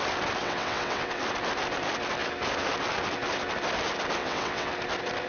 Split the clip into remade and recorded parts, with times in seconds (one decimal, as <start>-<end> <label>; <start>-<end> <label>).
0.0-0.4 recorded; 0.4-1.2 remade; 1.2-4.2 recorded; 4.2-4.7 remade; 4.7-5.3 recorded